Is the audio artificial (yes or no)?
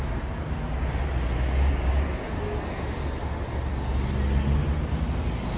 no